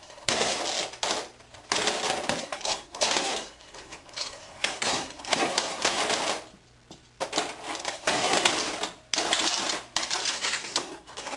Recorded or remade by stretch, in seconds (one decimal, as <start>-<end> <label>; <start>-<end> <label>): 0.0-0.6 remade; 0.6-2.4 recorded; 2.4-6.0 remade; 6.0-7.8 recorded; 7.8-8.5 remade; 8.5-10.3 recorded; 10.3-11.4 remade